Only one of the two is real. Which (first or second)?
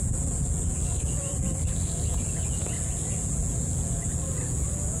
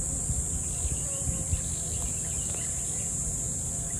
second